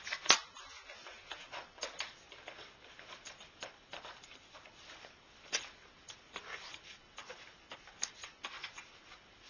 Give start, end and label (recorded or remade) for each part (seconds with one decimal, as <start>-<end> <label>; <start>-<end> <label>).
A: 0.0-7.0 recorded; 7.0-7.9 remade; 7.9-9.5 recorded